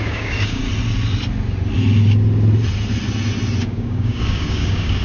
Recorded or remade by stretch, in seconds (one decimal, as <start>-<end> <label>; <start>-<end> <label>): 0.0-0.6 remade; 0.6-3.6 recorded; 3.6-5.0 remade